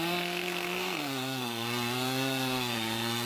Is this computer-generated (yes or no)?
yes